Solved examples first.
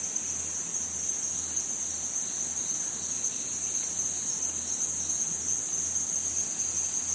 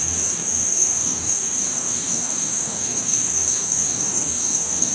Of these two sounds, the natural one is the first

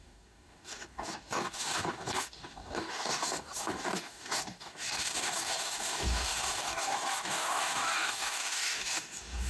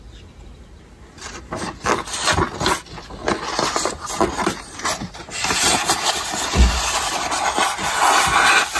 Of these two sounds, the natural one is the second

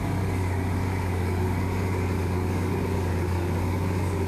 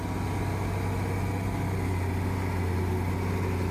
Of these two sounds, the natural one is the second